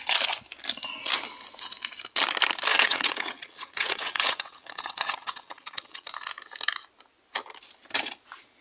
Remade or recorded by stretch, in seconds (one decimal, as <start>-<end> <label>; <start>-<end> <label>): 0.0-2.7 recorded; 2.7-6.1 remade; 6.1-8.6 recorded